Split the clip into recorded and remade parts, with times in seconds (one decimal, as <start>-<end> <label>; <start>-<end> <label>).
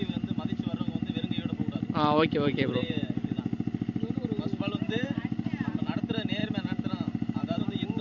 0.0-1.6 recorded; 1.6-3.0 remade; 3.0-8.0 recorded